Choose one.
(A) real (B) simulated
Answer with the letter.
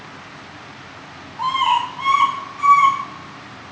A